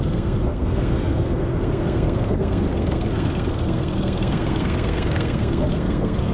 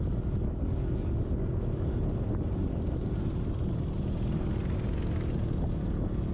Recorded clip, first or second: second